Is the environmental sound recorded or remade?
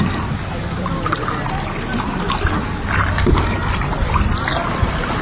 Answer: recorded